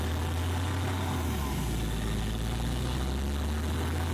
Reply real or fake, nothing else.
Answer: real